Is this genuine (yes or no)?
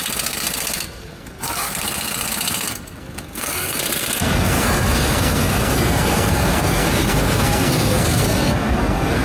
no